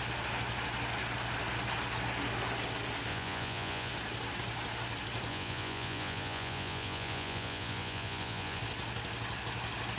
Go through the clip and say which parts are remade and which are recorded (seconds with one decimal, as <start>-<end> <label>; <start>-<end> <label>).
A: 0.0-3.1 recorded; 3.1-3.9 remade; 3.9-5.3 recorded; 5.3-8.6 remade; 8.6-10.0 recorded